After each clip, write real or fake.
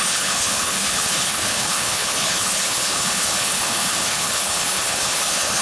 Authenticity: fake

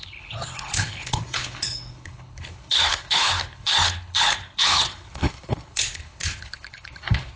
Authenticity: fake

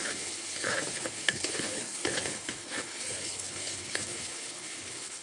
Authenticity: fake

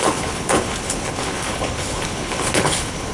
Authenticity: fake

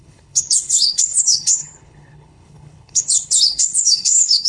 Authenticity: fake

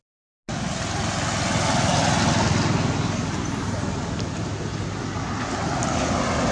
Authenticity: real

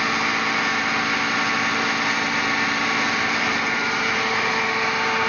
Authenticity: real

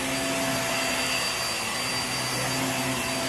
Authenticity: real